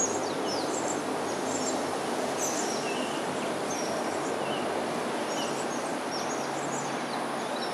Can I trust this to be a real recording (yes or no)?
yes